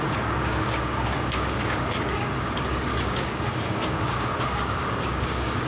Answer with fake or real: fake